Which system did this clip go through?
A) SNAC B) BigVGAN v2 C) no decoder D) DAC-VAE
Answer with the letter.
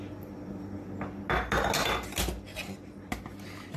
C